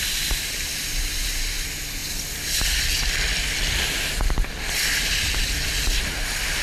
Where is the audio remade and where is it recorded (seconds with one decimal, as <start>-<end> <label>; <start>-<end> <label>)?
0.0-6.6 recorded